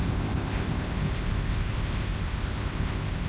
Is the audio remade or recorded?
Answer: remade